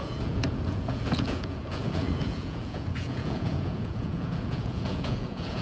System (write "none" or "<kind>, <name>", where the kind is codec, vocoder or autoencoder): vocoder, Vocos